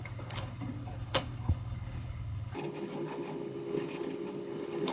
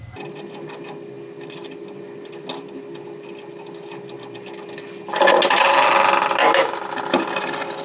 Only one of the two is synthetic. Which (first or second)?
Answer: first